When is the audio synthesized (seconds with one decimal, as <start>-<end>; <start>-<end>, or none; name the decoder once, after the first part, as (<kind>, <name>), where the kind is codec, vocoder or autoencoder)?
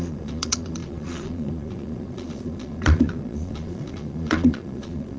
0.0-5.2 (vocoder, Vocos)